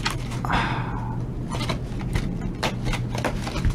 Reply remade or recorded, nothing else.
recorded